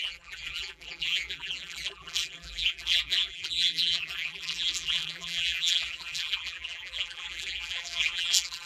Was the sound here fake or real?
fake